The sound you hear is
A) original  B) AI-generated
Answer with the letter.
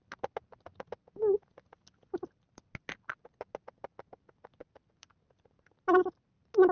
A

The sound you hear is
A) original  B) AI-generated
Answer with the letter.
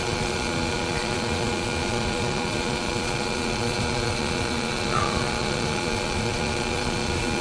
B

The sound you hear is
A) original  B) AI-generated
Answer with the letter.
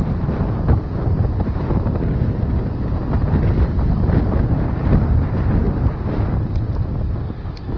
A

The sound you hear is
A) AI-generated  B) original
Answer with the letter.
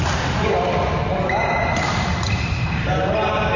B